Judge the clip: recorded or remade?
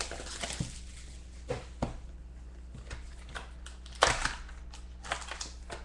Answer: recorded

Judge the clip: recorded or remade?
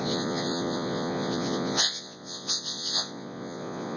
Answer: remade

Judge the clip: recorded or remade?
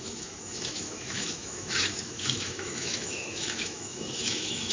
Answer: remade